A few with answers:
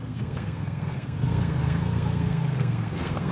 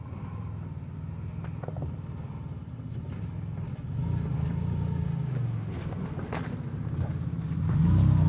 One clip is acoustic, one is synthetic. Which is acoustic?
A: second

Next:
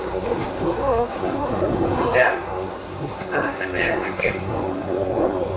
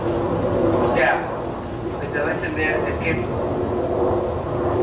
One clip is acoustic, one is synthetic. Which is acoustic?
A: second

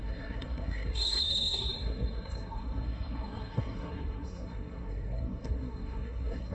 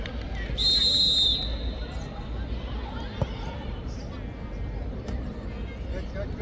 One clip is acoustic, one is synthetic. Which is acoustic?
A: second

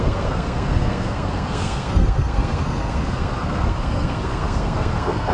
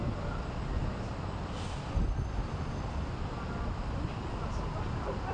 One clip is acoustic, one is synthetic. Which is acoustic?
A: second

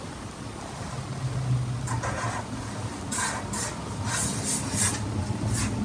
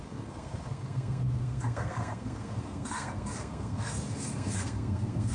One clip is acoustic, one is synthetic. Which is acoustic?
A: first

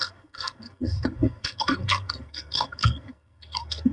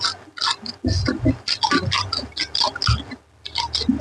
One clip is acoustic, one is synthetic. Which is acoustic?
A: second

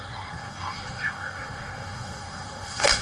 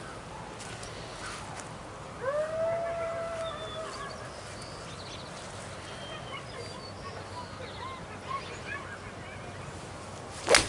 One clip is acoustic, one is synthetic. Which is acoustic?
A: second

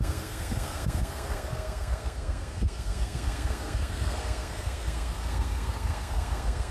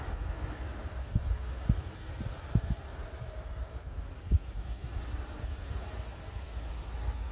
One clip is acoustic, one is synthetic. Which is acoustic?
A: second